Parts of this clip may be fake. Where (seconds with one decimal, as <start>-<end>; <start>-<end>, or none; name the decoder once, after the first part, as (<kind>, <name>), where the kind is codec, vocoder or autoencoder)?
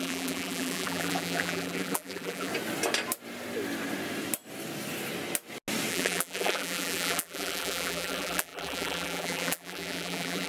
0.0-2.5 (vocoder, BigVGAN v2); 5.9-10.5